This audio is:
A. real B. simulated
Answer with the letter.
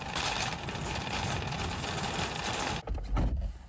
A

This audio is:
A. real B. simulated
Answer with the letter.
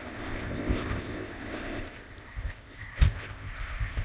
B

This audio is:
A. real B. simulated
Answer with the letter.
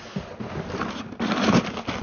A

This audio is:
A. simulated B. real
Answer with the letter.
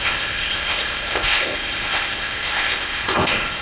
A